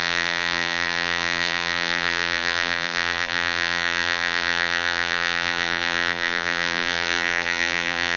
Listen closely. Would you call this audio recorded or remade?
remade